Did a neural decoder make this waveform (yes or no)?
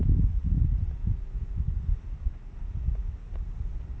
no